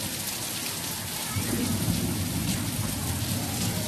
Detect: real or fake real